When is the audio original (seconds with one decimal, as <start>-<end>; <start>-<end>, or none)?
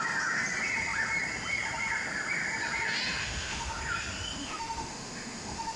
0.0-3.2; 3.8-4.4